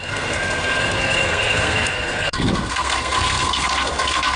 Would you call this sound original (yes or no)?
no